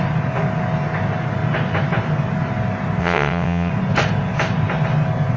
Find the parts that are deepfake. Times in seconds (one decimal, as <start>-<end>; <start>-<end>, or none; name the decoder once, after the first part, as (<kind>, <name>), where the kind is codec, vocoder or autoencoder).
3.0-3.7 (vocoder, WaveNeXt)